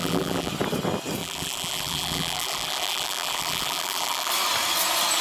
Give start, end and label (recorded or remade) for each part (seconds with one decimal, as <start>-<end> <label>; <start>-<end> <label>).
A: 0.0-0.5 remade; 0.5-1.2 recorded; 1.2-4.3 remade; 4.3-5.2 recorded